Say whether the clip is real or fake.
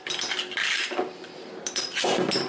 real